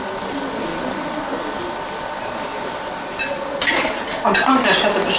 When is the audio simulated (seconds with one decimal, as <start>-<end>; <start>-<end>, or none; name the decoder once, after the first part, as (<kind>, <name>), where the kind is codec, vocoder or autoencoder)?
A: none